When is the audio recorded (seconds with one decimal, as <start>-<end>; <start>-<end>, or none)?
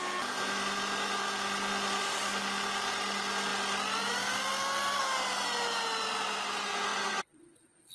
0.0-6.9